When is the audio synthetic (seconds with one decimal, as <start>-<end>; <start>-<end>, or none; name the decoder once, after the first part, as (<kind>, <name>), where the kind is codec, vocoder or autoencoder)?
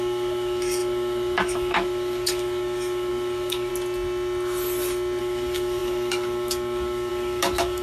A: 0.0-3.7 (codec, DAC); 5.2-7.8